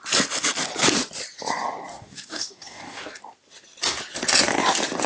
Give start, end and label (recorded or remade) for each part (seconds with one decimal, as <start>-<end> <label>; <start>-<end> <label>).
0.0-1.9 recorded; 1.9-3.2 remade; 3.2-5.1 recorded